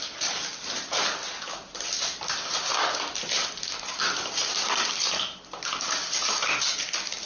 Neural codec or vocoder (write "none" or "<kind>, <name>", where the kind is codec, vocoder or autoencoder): none